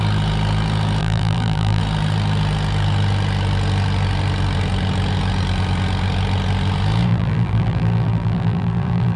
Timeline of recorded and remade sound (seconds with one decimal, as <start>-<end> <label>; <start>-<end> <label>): 0.0-1.0 recorded; 1.0-1.8 remade; 1.8-7.1 recorded; 7.1-9.2 remade